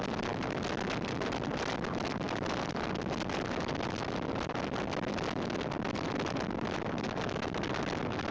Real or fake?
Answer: real